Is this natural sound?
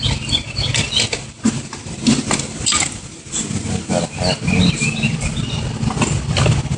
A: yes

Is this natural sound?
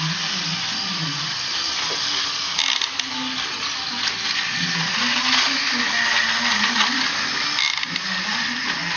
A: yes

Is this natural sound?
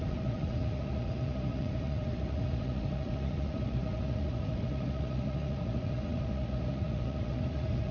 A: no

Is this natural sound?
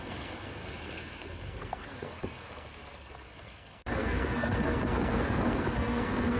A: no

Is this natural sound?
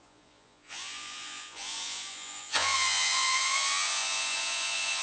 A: no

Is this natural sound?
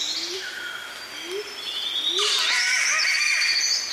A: yes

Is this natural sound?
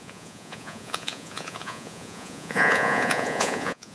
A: no